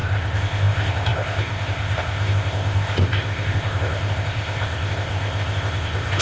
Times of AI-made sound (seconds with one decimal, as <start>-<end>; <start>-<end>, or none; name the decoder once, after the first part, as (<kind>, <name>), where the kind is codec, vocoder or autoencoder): 0.0-6.2 (codec, ZipCodec)